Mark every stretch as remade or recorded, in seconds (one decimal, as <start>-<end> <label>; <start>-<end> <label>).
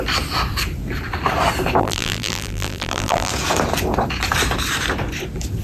0.0-1.8 recorded; 1.8-3.3 remade; 3.3-5.6 recorded